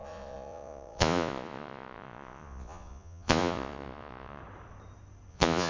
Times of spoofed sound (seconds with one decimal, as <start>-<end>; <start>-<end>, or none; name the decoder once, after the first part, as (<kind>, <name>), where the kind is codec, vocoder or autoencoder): 0.0-4.4 (vocoder, Vocos); 5.3-5.7